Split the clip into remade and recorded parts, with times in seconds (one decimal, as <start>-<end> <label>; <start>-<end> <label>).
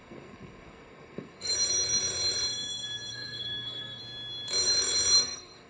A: 0.0-1.5 remade; 1.5-3.1 recorded; 3.1-4.0 remade; 4.0-5.2 recorded; 5.2-5.7 remade